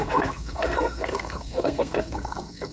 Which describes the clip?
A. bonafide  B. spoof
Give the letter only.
B